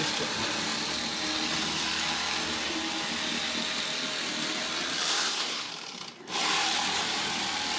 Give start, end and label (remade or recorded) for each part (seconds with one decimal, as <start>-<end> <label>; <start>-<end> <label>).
0.0-5.1 recorded; 5.1-5.7 remade; 5.7-7.8 recorded